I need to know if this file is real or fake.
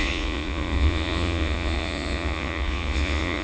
fake